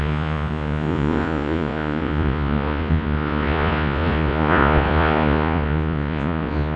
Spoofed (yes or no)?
yes